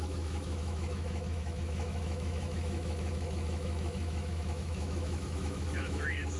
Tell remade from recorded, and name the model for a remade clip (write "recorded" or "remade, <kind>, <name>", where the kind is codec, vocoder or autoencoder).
remade, autoencoder, DAC-VAE